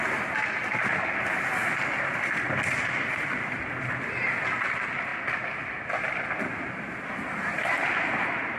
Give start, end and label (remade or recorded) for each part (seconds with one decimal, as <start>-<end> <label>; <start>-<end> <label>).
0.0-8.6 recorded